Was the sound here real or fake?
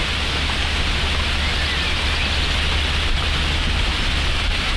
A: real